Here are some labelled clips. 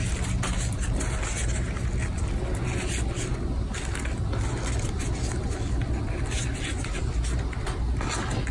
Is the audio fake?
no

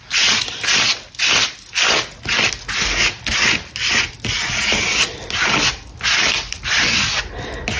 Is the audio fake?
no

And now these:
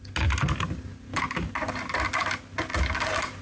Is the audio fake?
no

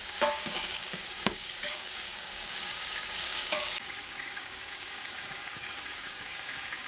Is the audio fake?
yes